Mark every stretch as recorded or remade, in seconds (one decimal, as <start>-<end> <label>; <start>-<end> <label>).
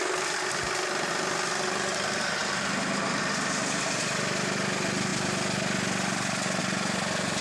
0.0-7.4 recorded